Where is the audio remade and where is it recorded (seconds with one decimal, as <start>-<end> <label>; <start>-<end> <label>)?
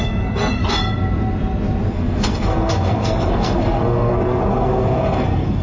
0.0-0.6 remade; 0.6-1.9 recorded; 1.9-5.6 remade